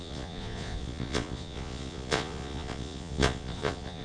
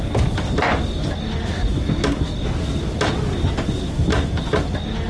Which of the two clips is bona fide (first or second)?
second